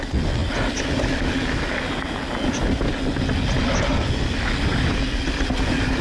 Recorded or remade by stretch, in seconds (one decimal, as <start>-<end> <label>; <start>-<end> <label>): 0.0-6.0 recorded